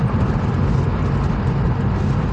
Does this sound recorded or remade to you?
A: recorded